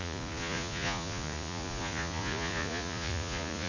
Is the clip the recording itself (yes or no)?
no